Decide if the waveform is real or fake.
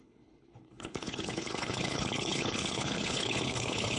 fake